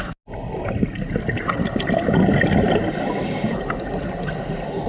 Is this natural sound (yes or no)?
yes